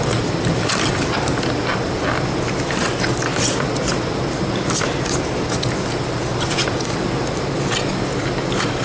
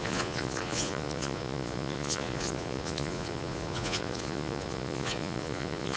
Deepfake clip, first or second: second